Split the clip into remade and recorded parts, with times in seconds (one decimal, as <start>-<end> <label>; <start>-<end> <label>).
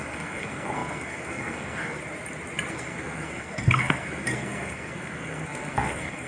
0.0-2.0 remade; 2.0-2.7 recorded; 2.7-6.3 remade